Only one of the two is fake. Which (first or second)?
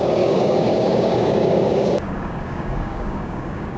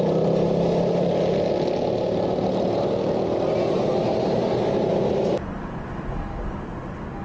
first